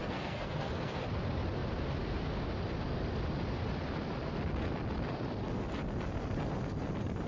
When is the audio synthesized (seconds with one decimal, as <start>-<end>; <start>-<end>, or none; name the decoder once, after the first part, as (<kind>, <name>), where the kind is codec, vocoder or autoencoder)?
0.0-1.0 (codec, SNAC)